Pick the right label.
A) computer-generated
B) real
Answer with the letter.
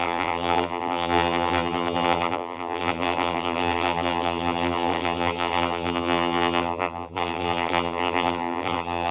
A